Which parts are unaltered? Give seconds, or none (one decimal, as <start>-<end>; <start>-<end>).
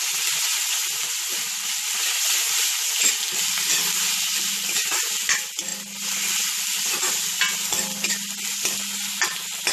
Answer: 0.0-9.7